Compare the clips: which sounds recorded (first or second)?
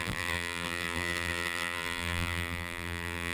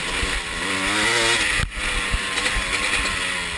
second